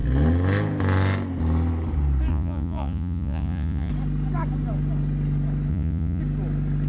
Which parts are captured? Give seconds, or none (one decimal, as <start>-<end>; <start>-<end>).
0.0-2.3; 3.9-5.7; 6.2-6.9